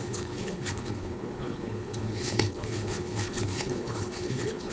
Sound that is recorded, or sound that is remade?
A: remade